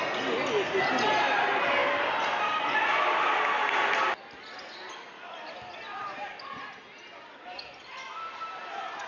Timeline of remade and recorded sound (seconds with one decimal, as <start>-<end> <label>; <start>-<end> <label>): 0.0-9.1 recorded